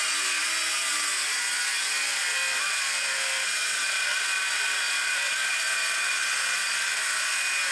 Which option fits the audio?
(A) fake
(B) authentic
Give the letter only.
B